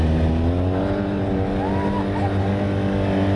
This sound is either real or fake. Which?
real